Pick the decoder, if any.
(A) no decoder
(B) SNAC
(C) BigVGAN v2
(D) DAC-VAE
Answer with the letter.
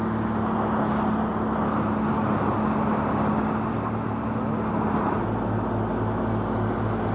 A